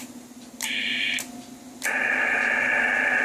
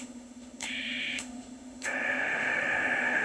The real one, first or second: first